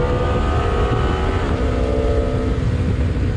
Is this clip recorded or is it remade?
recorded